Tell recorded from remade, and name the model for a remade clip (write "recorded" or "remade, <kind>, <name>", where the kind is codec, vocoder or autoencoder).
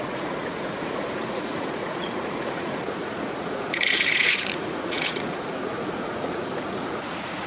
remade, vocoder, Vocos